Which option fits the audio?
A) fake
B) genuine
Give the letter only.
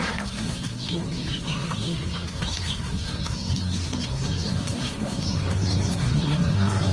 A